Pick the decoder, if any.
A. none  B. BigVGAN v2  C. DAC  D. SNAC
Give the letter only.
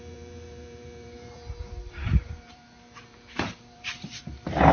B